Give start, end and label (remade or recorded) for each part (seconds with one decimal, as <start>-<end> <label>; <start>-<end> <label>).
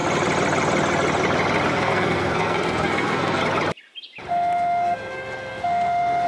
0.0-1.7 recorded; 1.7-3.4 remade; 3.4-4.3 recorded; 4.3-6.3 remade